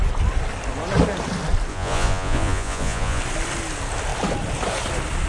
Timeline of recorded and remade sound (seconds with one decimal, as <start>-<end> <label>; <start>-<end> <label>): 0.0-1.7 recorded; 1.7-3.2 remade; 3.2-5.3 recorded